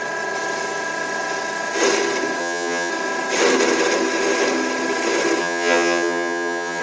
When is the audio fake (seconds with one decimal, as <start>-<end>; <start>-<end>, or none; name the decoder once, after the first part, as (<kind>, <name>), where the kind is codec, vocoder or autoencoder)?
2.4-2.9 (vocoder, HiFi-GAN); 5.4-6.8